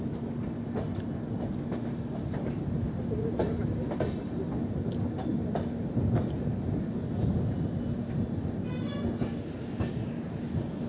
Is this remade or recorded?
recorded